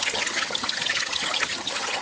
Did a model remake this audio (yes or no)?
yes